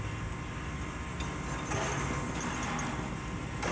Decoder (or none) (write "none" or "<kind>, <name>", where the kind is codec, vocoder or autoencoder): none